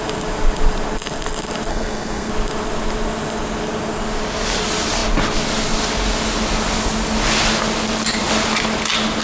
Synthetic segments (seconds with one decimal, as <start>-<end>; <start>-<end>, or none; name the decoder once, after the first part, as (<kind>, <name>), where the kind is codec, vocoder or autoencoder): 1.7-2.3 (codec, SNAC)

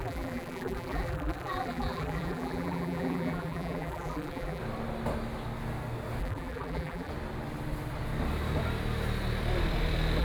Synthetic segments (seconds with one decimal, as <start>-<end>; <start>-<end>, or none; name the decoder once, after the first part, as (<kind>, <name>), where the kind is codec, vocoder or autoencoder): 0.0-4.6 (vocoder, BigVGAN v2); 6.2-7.1

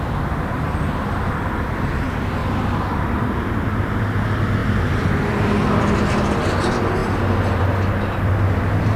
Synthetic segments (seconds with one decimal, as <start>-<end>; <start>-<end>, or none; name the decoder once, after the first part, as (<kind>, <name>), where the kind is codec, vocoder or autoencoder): none